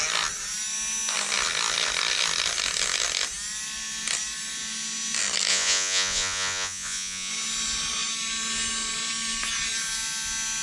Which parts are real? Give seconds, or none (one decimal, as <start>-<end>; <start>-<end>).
0.0-5.5; 7.3-10.6